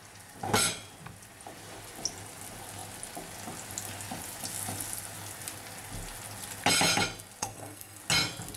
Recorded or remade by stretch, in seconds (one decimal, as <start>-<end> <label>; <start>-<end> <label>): 0.0-7.4 recorded; 7.4-8.0 remade; 8.0-8.6 recorded